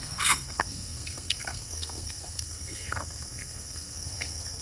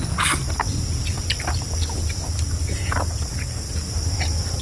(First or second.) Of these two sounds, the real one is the second